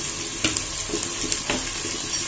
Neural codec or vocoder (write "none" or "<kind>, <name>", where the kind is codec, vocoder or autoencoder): none